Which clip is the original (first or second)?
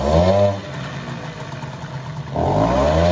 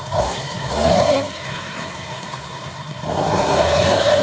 first